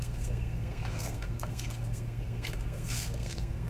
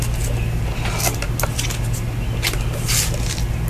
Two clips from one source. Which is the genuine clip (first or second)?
second